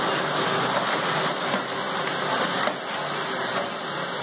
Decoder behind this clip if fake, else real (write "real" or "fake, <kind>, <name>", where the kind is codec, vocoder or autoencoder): real